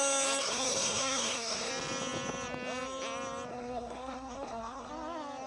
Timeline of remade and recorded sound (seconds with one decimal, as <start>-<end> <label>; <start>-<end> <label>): 0.0-0.4 recorded; 0.4-1.7 remade; 1.7-3.5 recorded; 3.5-4.9 remade; 4.9-5.5 recorded